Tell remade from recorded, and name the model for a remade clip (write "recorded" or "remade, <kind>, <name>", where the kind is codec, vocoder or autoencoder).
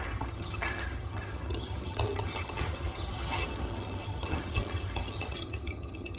remade, vocoder, HiFi-GAN